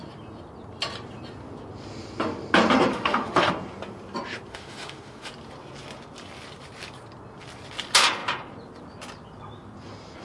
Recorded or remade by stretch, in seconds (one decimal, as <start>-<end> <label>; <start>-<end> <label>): 0.0-2.9 recorded; 2.9-3.5 remade; 3.5-4.5 recorded; 4.5-5.3 remade; 5.3-10.2 recorded